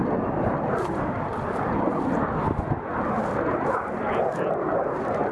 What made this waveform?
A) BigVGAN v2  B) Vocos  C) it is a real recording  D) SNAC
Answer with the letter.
C